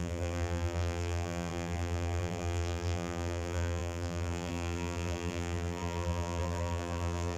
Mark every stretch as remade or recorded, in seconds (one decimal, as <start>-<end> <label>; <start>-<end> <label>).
0.0-7.4 remade